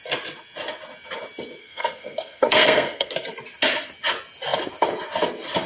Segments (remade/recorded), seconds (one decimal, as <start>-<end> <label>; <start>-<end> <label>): 0.0-1.6 recorded; 1.6-3.1 remade; 3.1-5.7 recorded